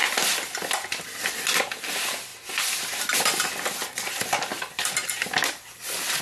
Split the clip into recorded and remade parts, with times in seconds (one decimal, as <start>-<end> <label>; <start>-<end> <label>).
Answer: 0.0-6.2 recorded